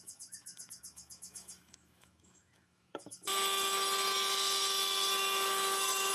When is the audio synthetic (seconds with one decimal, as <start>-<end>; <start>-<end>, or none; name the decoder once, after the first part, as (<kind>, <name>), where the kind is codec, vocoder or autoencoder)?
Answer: 0.0-3.3 (autoencoder, DAC-VAE)